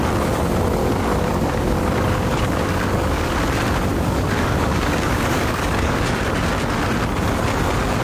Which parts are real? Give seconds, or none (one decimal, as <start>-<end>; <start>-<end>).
0.0-0.8; 3.3-3.9; 6.2-8.0